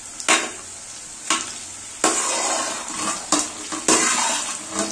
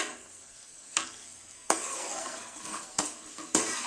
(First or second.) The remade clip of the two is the second